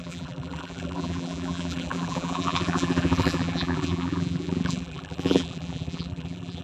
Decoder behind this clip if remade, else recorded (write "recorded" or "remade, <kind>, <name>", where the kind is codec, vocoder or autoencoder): remade, vocoder, BigVGAN v2